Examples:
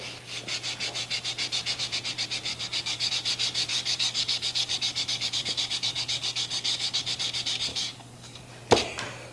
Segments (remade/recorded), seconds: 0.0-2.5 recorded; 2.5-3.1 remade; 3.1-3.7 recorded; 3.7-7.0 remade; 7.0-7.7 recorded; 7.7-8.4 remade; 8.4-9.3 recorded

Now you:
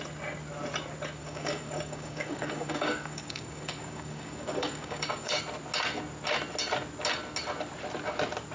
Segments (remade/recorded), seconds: 0.0-1.2 recorded; 1.2-5.4 remade; 5.4-8.5 recorded

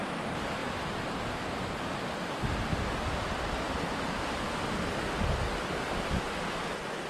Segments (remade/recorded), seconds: 0.0-7.1 recorded

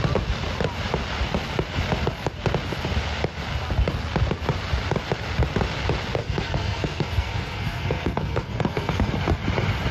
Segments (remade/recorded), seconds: 0.0-6.2 recorded; 6.2-9.1 remade; 9.1-9.9 recorded

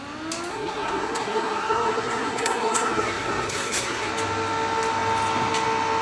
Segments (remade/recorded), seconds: 0.0-0.5 recorded; 0.5-4.1 remade; 4.1-6.0 recorded

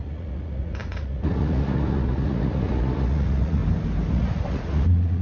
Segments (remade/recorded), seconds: 0.0-3.6 remade; 3.6-4.1 recorded; 4.1-5.2 remade

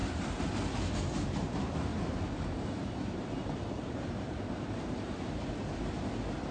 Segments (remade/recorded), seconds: 0.0-0.5 remade; 0.5-1.9 recorded; 1.9-5.5 remade; 5.5-6.5 recorded

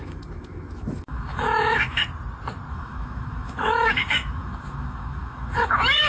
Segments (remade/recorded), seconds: 0.0-2.0 remade; 2.0-2.7 recorded; 2.7-6.1 remade